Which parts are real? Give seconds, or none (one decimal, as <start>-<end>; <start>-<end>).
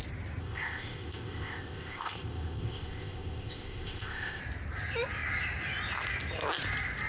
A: 0.0-0.4; 4.4-7.1